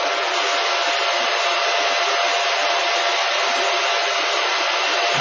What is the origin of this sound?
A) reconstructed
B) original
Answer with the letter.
B